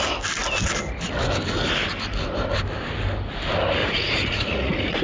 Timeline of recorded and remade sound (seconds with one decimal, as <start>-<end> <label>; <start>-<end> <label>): 0.0-3.8 recorded; 3.8-5.0 remade